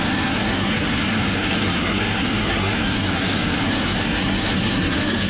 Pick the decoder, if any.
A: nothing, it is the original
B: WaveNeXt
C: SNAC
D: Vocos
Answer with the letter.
C